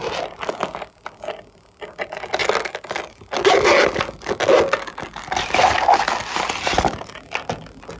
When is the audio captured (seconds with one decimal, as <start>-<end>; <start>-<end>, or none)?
0.0-8.0